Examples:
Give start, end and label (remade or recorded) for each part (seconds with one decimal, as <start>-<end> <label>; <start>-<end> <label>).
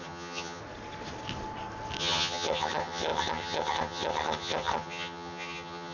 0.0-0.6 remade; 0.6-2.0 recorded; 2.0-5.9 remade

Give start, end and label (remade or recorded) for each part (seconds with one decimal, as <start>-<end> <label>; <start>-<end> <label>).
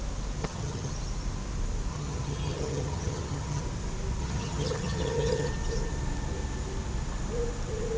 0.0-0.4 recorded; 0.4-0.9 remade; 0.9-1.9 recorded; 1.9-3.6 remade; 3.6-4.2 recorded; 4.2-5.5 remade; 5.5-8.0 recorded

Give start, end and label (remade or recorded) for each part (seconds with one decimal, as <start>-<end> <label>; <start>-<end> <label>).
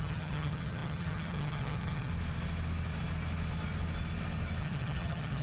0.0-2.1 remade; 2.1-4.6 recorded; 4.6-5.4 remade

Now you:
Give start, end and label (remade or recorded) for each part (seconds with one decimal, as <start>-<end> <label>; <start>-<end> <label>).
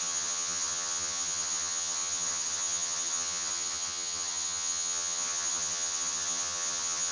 0.0-7.1 remade